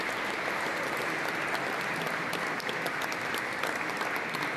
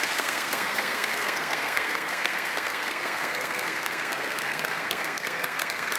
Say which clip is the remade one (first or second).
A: second